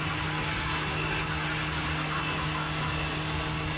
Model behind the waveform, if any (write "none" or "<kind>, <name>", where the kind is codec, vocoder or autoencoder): none